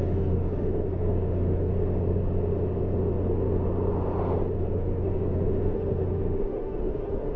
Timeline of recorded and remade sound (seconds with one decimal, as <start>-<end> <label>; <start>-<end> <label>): 0.0-1.7 remade; 1.7-4.6 recorded; 4.6-7.4 remade